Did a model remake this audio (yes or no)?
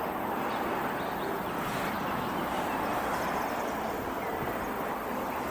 no